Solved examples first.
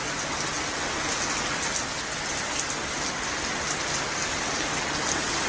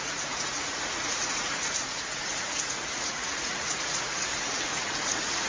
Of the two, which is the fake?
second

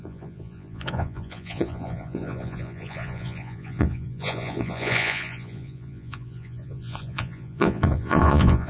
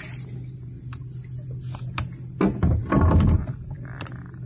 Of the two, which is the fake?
first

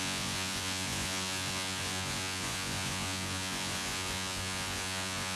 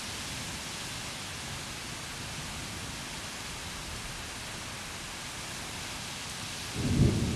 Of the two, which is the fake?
first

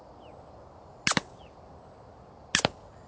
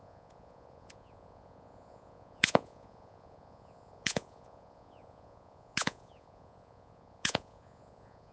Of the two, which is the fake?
second